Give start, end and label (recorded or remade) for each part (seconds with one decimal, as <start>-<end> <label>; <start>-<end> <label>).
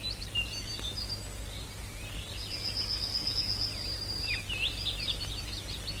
0.0-2.8 recorded; 2.8-3.3 remade; 3.3-6.0 recorded